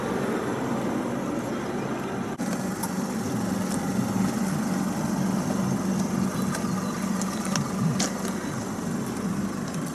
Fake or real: real